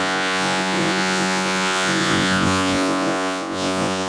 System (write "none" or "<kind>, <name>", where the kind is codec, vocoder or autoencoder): vocoder, Vocos